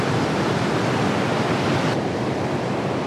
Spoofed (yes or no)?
yes